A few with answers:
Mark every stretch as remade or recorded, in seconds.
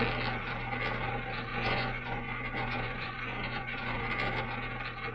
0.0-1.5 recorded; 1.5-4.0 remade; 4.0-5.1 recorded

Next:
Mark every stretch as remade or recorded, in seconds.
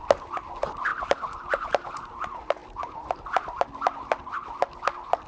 0.0-5.3 recorded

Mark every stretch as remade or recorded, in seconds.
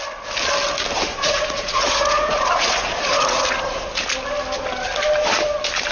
0.0-1.1 recorded; 1.1-3.4 remade; 3.4-5.9 recorded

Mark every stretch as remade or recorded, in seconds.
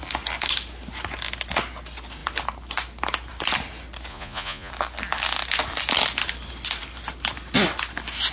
0.0-4.1 recorded; 4.1-4.7 remade; 4.7-8.3 recorded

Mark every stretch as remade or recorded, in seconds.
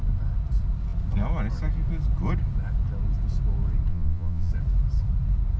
0.0-3.9 recorded; 3.9-4.5 remade; 4.5-5.6 recorded